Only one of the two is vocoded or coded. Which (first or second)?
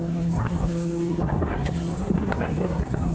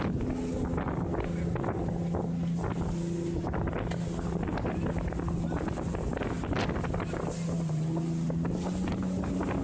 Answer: first